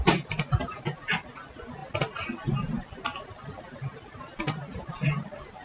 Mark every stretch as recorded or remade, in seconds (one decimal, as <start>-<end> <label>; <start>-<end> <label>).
0.0-5.6 recorded